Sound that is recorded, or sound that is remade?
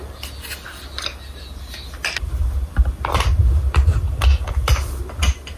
recorded